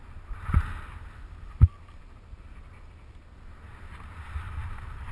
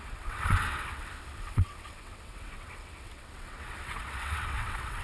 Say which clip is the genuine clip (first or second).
first